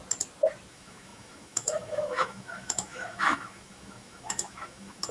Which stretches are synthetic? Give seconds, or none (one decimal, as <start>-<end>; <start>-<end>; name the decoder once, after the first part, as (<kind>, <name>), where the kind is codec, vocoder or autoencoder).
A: 0.7-5.1 (autoencoder, DAC-VAE)